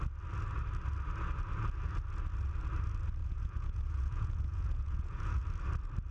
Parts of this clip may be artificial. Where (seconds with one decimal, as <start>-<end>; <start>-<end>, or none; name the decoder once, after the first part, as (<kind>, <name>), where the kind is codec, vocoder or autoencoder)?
3.2-5.4 (vocoder, Vocos)